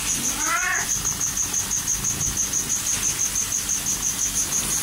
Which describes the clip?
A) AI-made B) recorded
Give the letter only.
B